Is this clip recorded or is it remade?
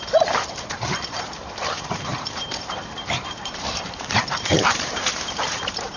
remade